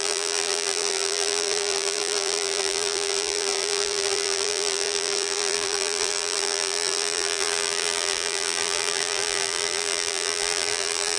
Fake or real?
fake